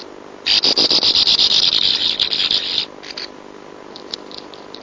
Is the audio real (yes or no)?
yes